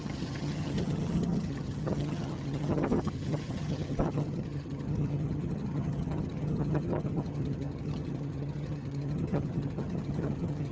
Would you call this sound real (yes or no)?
no